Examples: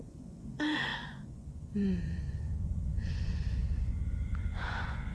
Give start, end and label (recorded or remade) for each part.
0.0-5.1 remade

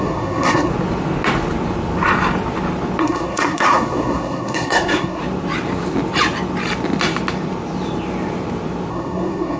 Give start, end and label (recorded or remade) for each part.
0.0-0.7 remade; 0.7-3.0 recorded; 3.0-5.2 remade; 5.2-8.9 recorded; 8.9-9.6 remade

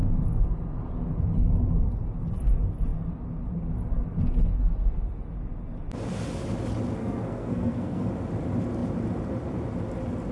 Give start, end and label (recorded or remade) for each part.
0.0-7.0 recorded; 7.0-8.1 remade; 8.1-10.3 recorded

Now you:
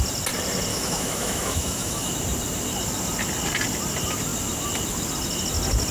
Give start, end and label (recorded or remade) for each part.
0.0-0.7 recorded; 0.7-2.1 remade; 2.1-5.9 recorded

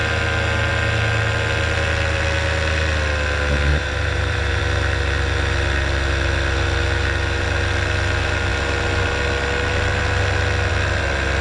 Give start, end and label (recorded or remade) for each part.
0.0-3.7 recorded; 3.7-4.6 remade; 4.6-11.4 recorded